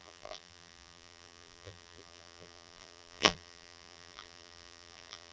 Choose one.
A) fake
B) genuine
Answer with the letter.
A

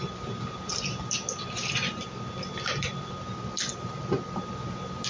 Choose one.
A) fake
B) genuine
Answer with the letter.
B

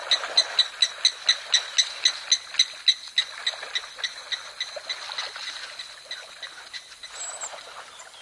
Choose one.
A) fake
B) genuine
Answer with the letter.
B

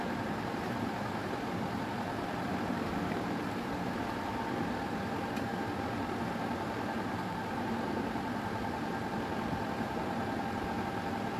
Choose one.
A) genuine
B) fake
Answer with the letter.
B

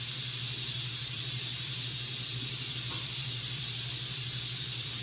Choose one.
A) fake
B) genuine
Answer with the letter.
A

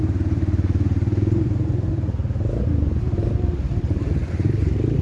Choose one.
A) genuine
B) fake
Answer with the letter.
B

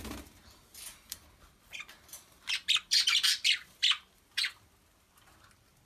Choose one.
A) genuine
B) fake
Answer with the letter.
B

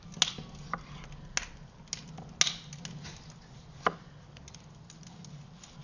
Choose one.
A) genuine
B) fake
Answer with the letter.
A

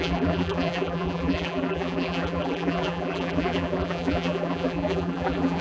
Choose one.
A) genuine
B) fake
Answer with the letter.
B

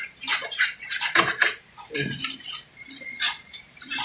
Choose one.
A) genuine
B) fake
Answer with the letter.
B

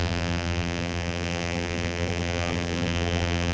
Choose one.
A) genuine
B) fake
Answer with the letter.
B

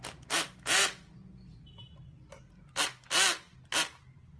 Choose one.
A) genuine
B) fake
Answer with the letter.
A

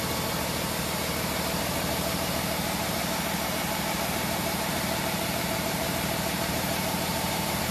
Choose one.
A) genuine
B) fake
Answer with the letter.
B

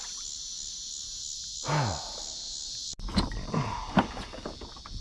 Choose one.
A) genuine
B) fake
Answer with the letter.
A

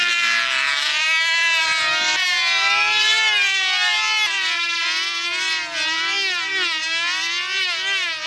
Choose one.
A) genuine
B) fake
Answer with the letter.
A